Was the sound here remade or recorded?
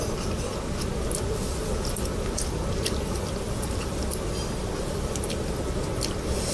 recorded